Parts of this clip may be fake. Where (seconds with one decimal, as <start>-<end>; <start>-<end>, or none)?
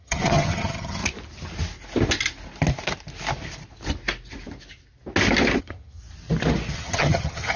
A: 0.0-1.0; 5.6-6.0; 6.7-7.6